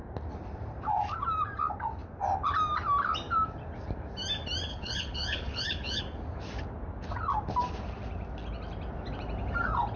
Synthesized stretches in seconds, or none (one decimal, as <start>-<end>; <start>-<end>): 4.7-6.0